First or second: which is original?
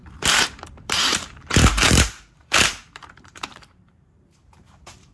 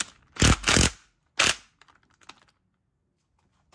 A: second